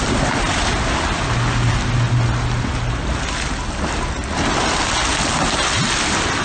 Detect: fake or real real